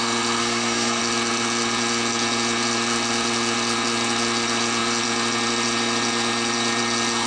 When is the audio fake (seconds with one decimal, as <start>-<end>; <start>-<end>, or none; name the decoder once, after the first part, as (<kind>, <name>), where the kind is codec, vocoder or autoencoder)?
0.4-1.0 (codec, SNAC)